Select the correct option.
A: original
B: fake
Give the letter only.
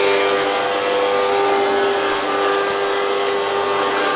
A